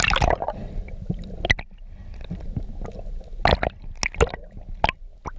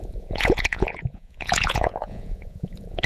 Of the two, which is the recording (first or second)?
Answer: first